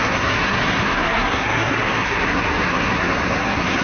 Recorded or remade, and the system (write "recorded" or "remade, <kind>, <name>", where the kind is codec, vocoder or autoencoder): remade, codec, SNAC